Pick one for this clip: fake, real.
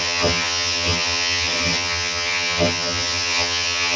fake